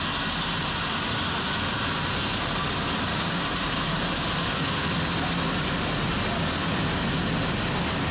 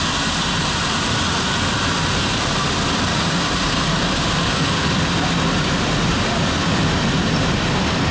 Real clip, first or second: first